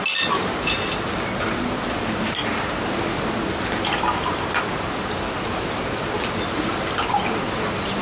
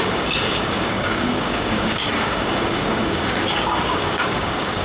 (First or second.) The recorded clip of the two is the first